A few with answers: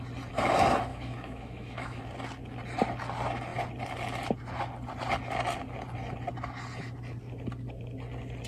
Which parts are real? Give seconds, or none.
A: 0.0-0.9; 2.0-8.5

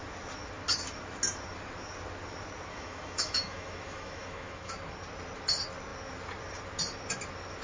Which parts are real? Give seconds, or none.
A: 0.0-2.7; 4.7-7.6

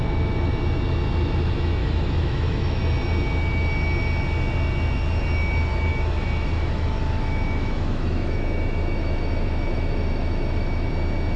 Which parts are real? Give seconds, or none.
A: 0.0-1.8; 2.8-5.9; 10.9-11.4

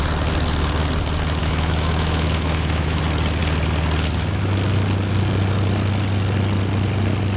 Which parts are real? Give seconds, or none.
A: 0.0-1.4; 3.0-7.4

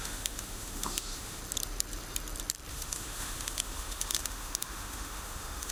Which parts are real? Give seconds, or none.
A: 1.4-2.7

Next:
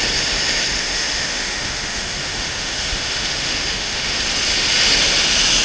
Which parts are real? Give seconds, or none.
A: 0.0-0.8; 4.2-5.6

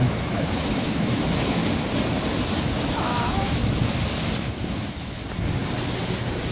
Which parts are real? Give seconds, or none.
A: 1.6-2.9; 3.6-4.4; 5.2-6.5